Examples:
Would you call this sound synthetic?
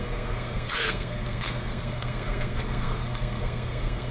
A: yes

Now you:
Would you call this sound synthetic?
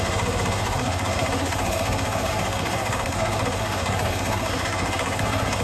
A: yes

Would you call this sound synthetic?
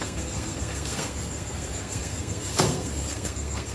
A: yes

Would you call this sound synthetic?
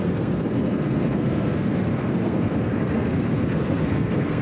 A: yes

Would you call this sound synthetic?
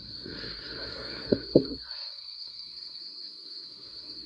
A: yes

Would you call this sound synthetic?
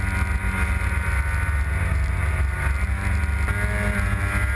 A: no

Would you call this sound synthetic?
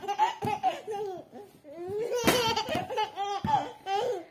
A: no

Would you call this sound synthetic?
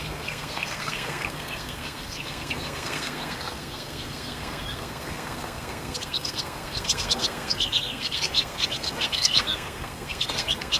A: yes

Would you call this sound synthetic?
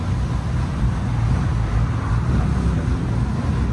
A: no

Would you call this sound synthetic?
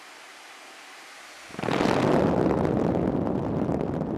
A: no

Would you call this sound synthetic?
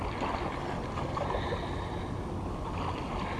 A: no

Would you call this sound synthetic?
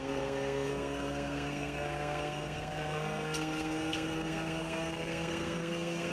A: yes